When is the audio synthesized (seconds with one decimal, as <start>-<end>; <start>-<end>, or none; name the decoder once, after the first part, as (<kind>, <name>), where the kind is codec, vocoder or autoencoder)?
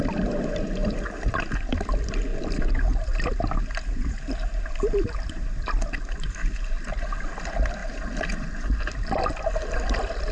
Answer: 0.8-1.4 (vocoder, BigVGAN v2); 7.8-9.7